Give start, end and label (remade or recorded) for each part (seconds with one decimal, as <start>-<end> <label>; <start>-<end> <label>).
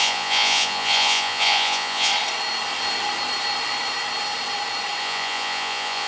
0.0-2.1 remade; 2.1-5.0 recorded; 5.0-6.1 remade